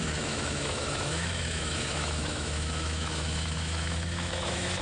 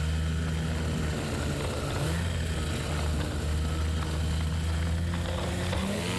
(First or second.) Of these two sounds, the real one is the second